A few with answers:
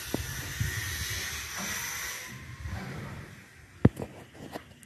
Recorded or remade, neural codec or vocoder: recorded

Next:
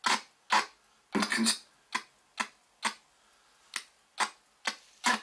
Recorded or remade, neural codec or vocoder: recorded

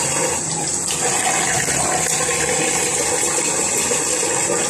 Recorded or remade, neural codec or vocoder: recorded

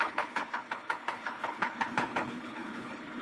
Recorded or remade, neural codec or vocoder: remade, codec, HILCodec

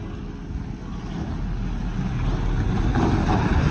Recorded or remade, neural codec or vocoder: recorded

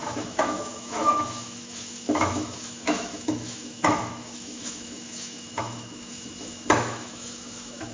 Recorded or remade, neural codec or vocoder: remade, autoencoder, DAC-VAE